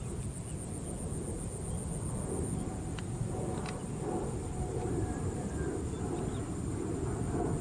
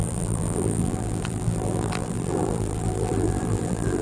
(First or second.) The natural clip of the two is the first